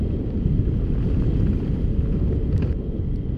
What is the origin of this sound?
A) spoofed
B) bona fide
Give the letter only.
B